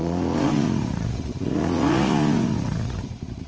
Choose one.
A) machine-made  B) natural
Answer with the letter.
A